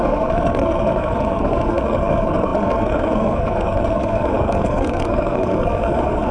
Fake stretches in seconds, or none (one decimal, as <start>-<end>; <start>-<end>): 0.0-6.3